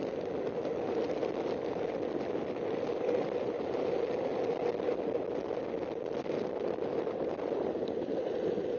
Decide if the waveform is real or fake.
real